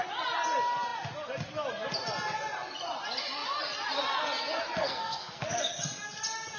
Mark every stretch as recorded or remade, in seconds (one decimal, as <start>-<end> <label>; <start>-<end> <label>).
0.0-4.8 recorded; 4.8-5.7 remade; 5.7-6.6 recorded